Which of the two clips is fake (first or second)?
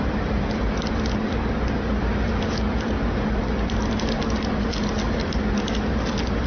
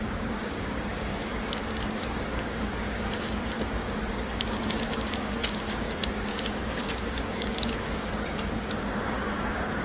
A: second